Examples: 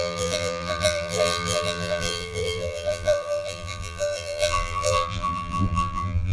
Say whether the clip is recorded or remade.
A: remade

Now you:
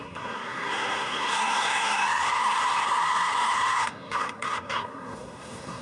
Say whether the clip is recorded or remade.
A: remade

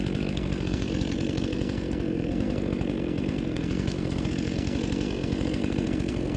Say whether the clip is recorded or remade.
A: remade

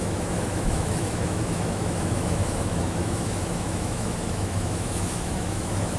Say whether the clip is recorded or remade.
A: remade